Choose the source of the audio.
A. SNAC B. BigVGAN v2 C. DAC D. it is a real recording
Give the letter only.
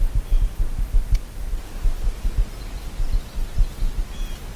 D